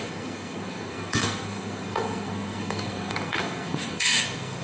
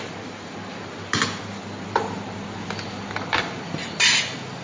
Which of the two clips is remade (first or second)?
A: first